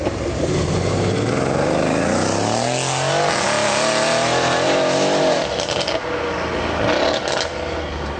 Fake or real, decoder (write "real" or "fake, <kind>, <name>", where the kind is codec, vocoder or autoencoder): real